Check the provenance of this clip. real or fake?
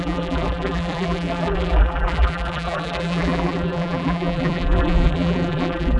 fake